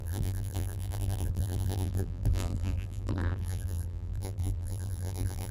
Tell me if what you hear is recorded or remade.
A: remade